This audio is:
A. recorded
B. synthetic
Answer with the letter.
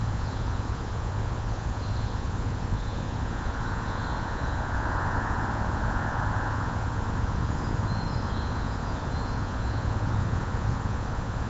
B